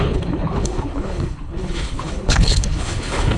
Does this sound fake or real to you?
fake